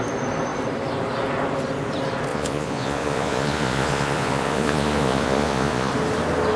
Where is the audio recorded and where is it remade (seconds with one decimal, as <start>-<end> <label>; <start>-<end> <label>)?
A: 0.0-2.3 recorded; 2.3-5.9 remade; 5.9-6.6 recorded